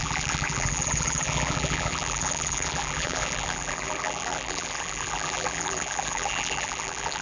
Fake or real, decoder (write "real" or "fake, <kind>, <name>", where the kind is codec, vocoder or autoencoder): fake, vocoder, BigVGAN v2